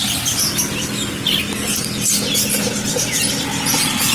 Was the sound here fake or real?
real